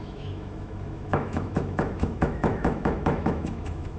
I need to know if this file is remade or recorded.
remade